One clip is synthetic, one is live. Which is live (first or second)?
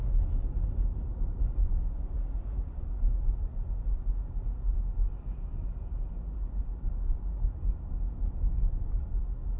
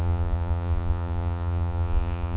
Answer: first